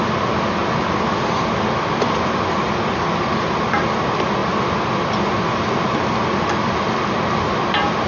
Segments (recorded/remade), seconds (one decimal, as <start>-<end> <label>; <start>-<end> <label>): 0.0-8.1 recorded